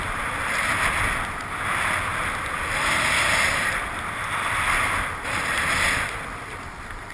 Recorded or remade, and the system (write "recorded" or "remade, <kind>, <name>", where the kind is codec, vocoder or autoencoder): recorded